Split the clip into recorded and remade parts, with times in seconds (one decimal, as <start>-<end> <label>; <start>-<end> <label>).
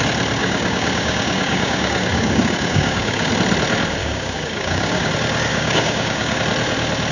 0.0-0.4 recorded; 0.4-3.3 remade; 3.3-4.0 recorded; 4.0-5.1 remade; 5.1-5.5 recorded; 5.5-6.4 remade; 6.4-7.1 recorded